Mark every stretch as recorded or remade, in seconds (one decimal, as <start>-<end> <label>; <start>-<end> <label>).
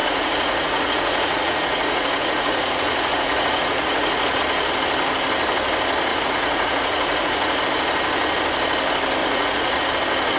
0.0-4.4 remade; 4.4-6.1 recorded; 6.1-7.6 remade; 7.6-9.2 recorded; 9.2-9.8 remade; 9.8-10.4 recorded